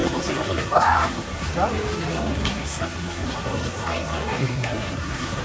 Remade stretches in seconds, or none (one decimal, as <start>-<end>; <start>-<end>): 0.0-1.5; 2.1-5.4